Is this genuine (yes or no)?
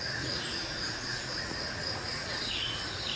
no